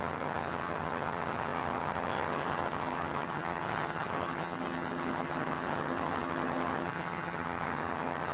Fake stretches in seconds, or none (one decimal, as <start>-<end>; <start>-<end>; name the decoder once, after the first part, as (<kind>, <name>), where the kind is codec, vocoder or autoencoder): 0.0-8.3 (vocoder, HiFi-GAN)